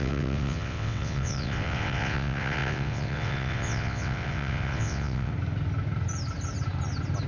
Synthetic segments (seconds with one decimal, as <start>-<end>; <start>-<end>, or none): 0.0-5.3